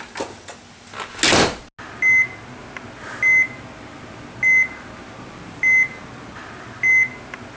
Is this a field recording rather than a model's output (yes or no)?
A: yes